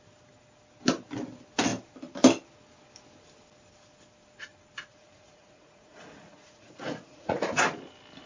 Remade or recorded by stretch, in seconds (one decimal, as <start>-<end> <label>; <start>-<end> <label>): 0.0-4.9 recorded; 4.9-7.5 remade; 7.5-8.3 recorded